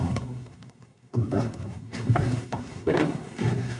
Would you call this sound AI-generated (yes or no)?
yes